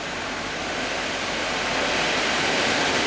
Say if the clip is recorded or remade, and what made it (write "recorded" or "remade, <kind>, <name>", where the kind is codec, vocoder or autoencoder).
recorded